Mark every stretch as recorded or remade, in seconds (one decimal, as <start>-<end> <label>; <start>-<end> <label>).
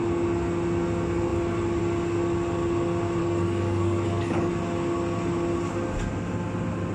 0.0-3.2 recorded; 3.2-4.5 remade; 4.5-6.9 recorded